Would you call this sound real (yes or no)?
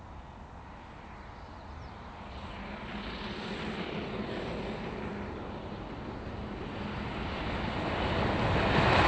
yes